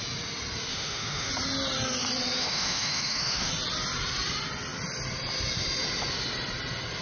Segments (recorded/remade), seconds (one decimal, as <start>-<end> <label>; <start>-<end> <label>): 0.0-0.7 recorded; 0.7-1.3 remade; 1.3-2.4 recorded; 2.4-3.5 remade; 3.5-7.0 recorded